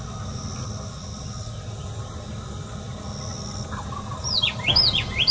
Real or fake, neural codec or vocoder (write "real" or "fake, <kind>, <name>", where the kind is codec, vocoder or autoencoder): real